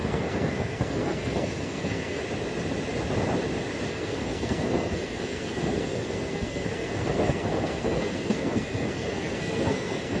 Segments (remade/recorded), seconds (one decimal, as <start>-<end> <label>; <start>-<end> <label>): 0.0-2.2 remade; 2.2-3.9 recorded; 3.9-10.2 remade